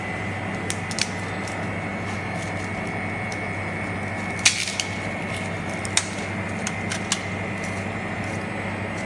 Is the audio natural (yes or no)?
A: yes